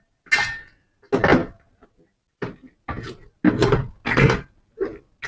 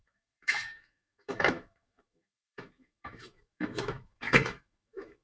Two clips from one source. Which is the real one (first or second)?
first